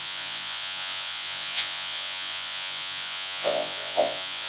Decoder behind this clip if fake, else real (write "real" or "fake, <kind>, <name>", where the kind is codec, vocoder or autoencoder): fake, vocoder, Vocos